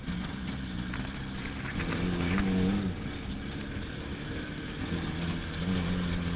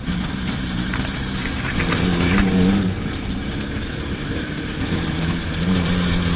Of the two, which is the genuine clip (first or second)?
first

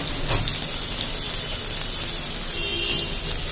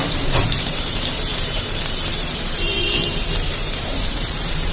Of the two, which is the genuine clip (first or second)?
first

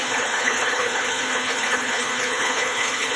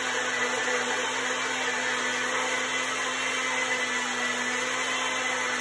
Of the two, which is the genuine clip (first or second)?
second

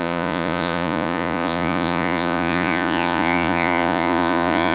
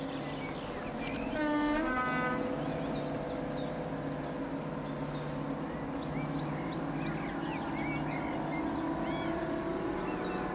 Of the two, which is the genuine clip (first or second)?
second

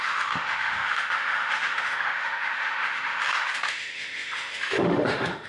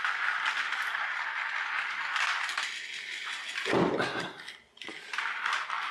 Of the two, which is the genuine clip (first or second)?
second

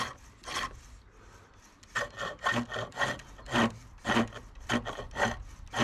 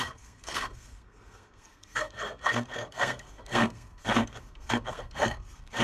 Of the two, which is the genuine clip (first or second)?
first